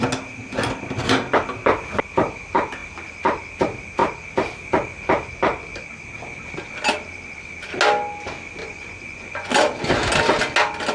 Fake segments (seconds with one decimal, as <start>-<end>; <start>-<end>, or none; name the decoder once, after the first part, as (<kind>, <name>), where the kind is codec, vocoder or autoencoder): 8.6-9.5 (vocoder, Vocos)